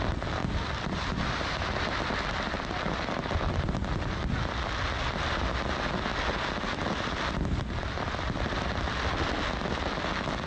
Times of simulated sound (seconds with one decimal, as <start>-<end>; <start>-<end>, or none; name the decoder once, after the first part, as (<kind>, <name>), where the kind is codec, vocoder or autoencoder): 0.4-3.5 (vocoder, BigVGAN v2); 6.1-8.7